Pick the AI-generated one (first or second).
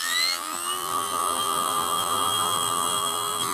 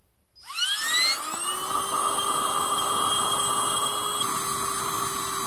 first